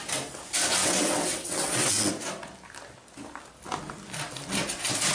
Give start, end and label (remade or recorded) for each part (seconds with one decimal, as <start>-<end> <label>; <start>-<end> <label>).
0.0-0.8 recorded; 0.8-2.1 remade; 2.1-5.1 recorded

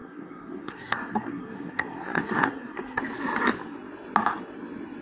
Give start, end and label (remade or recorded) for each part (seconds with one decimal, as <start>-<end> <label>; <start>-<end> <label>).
0.0-3.0 remade; 3.0-5.0 recorded

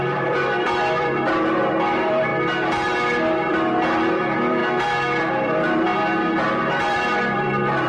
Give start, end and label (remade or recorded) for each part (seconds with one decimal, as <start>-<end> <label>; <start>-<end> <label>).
0.0-2.3 remade; 2.3-3.5 recorded; 3.5-4.6 remade; 4.6-5.3 recorded; 5.3-5.9 remade; 5.9-6.7 recorded; 6.7-7.9 remade

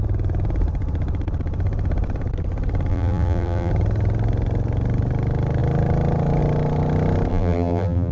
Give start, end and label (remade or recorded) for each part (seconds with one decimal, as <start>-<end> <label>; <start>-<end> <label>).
0.0-2.9 recorded; 2.9-3.7 remade; 3.7-7.3 recorded; 7.3-8.1 remade

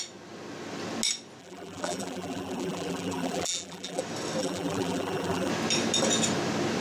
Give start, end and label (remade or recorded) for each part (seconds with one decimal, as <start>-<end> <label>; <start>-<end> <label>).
0.0-1.4 recorded; 1.4-4.0 remade; 4.0-4.4 recorded; 4.4-5.5 remade; 5.5-6.8 recorded

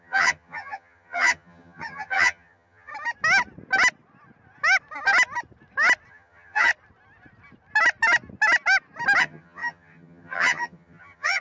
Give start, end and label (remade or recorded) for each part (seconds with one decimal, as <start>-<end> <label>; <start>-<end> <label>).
0.0-2.9 remade; 2.9-6.1 recorded; 6.1-6.7 remade; 6.7-9.2 recorded; 9.2-11.4 remade

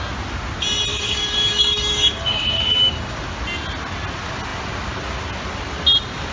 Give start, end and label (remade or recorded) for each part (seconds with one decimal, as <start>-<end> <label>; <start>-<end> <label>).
0.0-0.9 recorded; 0.9-3.2 remade; 3.2-6.3 recorded